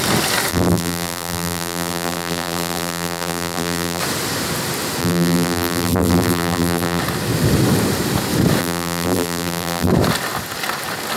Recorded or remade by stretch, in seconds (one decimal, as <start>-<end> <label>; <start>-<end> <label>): 0.0-0.5 recorded; 0.5-4.0 remade; 4.0-5.0 recorded; 5.0-7.0 remade; 7.0-8.6 recorded; 8.6-9.9 remade; 9.9-11.2 recorded